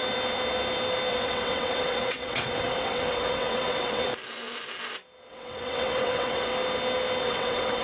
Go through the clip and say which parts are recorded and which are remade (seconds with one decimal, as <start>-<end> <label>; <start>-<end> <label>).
0.0-1.1 recorded; 1.1-4.1 remade; 4.1-5.3 recorded; 5.3-6.5 remade; 6.5-7.2 recorded; 7.2-7.8 remade